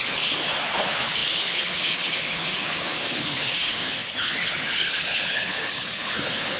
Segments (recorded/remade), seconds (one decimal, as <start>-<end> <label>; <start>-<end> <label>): 0.0-6.6 remade